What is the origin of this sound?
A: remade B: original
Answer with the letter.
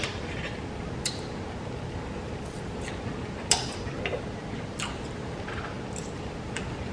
B